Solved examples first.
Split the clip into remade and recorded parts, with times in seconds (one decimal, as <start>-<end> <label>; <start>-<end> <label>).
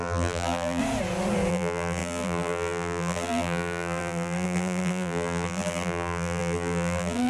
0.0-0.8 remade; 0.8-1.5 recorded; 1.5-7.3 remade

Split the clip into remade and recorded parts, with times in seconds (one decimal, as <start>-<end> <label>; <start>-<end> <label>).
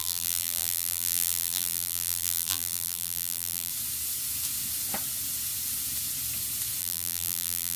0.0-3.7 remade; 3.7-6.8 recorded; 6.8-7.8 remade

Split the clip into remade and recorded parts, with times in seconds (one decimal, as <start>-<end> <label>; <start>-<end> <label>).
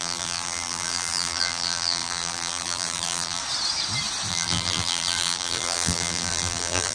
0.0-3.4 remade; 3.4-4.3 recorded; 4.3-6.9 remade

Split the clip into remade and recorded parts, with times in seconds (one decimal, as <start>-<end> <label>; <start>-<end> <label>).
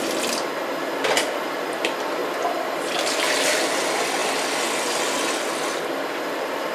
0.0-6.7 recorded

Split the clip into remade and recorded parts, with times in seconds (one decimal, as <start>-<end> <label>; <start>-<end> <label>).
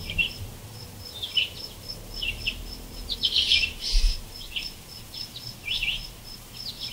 0.0-6.9 recorded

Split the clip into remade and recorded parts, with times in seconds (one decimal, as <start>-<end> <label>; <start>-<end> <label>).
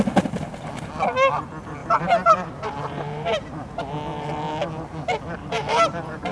0.0-1.8 recorded; 1.8-3.8 remade; 3.8-5.4 recorded; 5.4-6.3 remade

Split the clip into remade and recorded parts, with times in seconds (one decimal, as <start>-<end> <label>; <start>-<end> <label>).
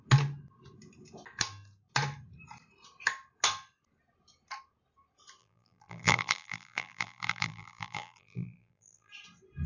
0.0-5.4 recorded; 5.4-9.1 remade; 9.1-9.7 recorded